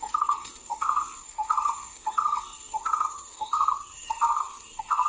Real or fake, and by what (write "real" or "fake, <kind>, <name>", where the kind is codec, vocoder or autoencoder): fake, codec, SNAC